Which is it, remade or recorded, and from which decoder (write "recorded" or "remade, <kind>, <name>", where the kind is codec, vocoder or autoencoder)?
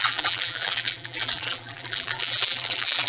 remade, vocoder, BigVGAN v2